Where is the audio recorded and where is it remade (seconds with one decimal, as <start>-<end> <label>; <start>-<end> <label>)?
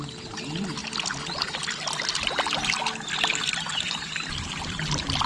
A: 0.0-5.3 recorded